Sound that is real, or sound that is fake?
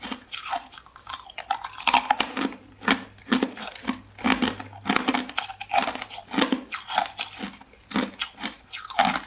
real